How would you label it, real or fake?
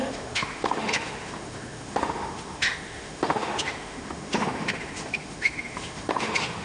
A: fake